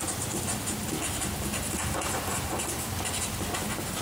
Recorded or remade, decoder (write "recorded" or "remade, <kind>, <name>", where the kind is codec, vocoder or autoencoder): recorded